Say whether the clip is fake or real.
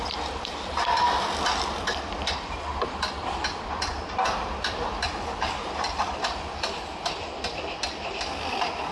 fake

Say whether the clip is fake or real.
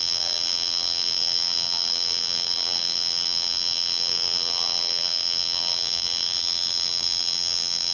fake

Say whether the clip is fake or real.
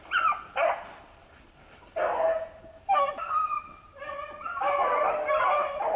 real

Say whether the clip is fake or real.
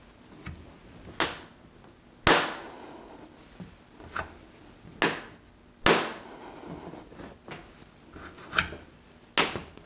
real